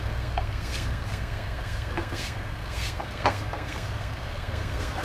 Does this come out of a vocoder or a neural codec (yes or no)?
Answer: yes